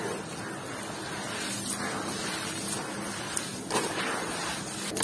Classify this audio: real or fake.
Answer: real